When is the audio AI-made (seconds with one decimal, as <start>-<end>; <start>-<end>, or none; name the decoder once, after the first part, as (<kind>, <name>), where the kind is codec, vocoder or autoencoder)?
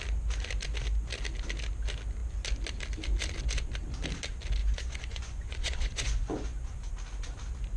4.6-6.9 (vocoder, Vocos)